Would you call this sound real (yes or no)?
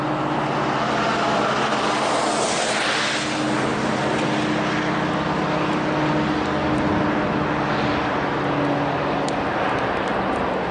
yes